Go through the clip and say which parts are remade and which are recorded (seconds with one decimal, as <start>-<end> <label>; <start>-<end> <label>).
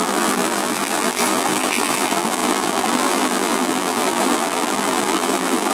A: 0.0-5.7 remade